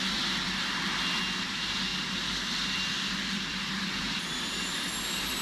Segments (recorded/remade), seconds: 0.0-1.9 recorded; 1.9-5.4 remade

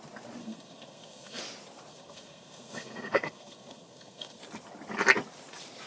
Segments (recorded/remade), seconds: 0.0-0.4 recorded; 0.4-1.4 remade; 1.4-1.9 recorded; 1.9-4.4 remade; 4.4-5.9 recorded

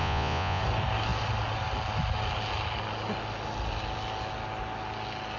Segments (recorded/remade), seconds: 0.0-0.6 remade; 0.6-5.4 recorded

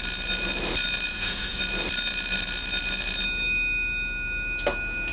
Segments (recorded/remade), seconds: 0.0-1.1 recorded; 1.1-1.6 remade; 1.6-5.1 recorded

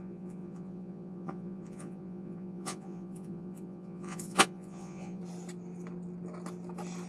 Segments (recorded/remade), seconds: 0.0-5.2 remade; 5.2-7.1 recorded

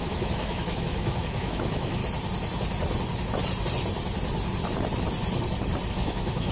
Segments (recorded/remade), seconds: 0.0-2.0 remade; 2.0-5.9 recorded; 5.9-6.5 remade

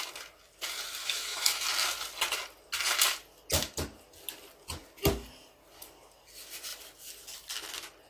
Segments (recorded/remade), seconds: 0.0-1.0 recorded; 1.0-1.6 remade; 1.6-8.1 recorded

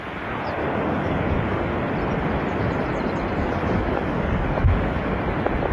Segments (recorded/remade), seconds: 0.0-0.6 recorded; 0.6-1.7 remade; 1.7-3.4 recorded; 3.4-5.2 remade; 5.2-5.7 recorded